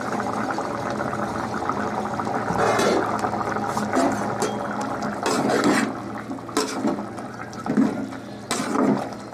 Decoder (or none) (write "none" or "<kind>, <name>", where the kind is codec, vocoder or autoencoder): none